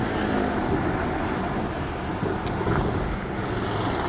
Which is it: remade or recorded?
recorded